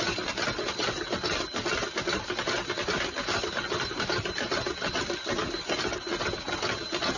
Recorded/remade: recorded